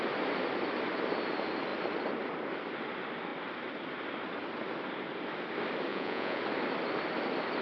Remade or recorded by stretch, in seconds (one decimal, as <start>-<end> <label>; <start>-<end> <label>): 0.0-5.9 recorded; 5.9-6.4 remade; 6.4-7.6 recorded